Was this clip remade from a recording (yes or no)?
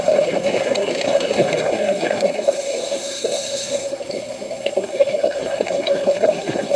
yes